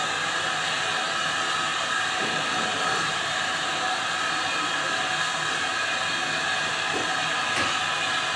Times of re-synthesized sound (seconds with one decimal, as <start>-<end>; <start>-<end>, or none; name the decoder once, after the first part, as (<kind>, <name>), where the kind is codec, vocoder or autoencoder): 1.7-4.8 (vocoder, BigVGAN v2)